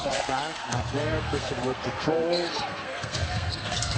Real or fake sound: fake